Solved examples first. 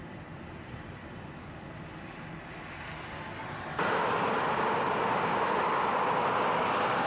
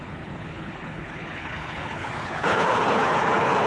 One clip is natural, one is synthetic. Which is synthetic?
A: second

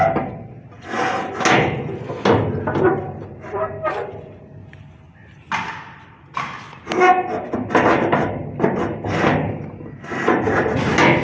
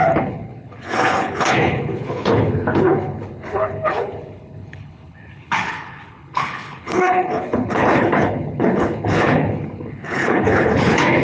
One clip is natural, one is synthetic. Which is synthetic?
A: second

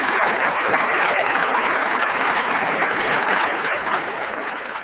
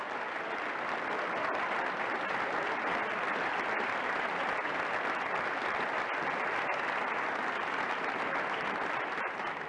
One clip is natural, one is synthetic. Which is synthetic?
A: first